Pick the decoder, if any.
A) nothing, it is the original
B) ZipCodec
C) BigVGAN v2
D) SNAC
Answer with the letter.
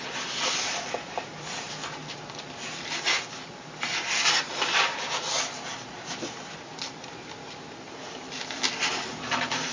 C